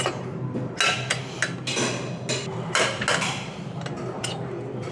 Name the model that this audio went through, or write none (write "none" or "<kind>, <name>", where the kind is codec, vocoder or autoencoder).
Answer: none